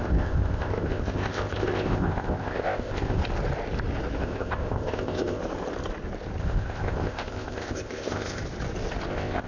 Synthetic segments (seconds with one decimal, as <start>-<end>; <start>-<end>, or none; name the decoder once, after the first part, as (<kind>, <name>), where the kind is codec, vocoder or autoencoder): 0.0-3.2 (codec, ZipCodec); 4.2-5.4; 6.4-8.4; 9.1-9.5